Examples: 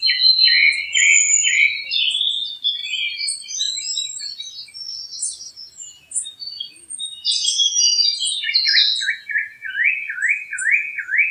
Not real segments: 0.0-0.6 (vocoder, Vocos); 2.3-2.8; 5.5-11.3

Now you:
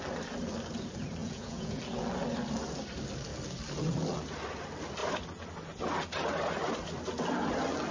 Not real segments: 1.2-1.8 (vocoder, Vocos)

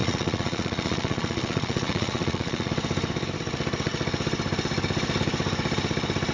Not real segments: 0.0-2.7 (vocoder, Vocos)